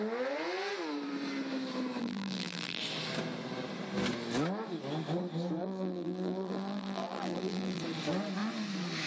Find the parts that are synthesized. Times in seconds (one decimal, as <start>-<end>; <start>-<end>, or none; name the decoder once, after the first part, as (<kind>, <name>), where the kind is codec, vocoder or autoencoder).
2.0-2.8 (vocoder, BigVGAN v2); 5.6-7.8